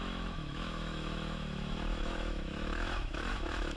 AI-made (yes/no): yes